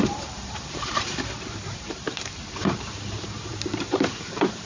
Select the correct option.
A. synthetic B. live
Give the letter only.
A